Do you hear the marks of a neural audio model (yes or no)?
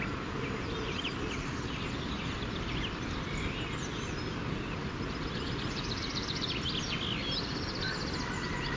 no